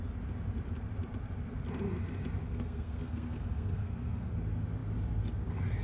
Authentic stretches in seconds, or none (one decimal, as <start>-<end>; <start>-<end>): 0.0-2.4; 4.3-5.8